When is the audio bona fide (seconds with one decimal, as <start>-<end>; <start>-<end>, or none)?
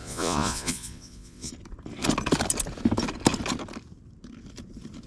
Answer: 1.5-5.1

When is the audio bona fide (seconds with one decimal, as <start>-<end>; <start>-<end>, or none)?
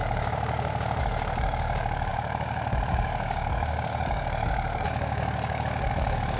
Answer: none